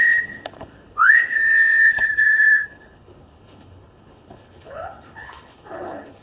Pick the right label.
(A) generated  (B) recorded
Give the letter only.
A